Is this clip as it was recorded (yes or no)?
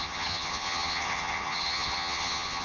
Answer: no